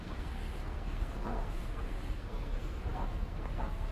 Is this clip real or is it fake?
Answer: fake